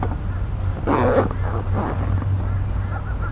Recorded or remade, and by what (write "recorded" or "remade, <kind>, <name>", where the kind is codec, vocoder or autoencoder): recorded